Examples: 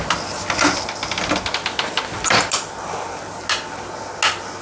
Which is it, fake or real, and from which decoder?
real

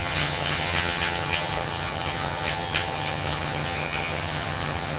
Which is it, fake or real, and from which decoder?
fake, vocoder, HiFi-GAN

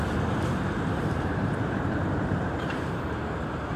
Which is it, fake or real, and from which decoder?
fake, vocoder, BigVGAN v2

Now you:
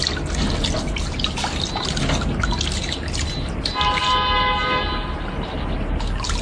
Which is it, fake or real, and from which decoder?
real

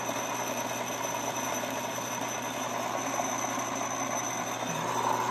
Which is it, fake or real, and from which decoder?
real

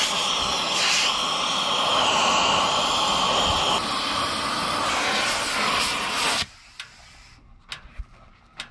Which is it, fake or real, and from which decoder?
real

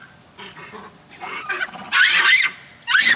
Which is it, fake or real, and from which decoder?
real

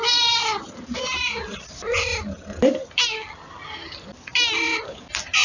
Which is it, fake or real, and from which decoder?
real